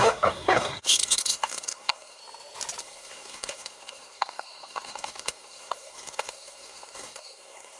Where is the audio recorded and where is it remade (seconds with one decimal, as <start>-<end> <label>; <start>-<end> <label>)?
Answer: 0.0-2.2 remade; 2.2-2.8 recorded; 2.8-7.8 remade